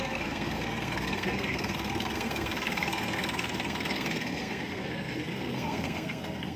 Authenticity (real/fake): fake